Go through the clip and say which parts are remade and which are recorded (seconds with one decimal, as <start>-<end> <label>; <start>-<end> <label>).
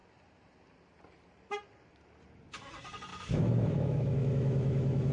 0.0-3.1 recorded; 3.1-5.1 remade